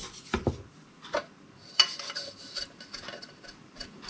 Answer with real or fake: real